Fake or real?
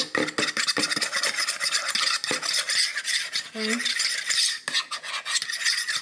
real